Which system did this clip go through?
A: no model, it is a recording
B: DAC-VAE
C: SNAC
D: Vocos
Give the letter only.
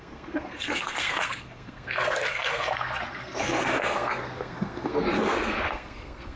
C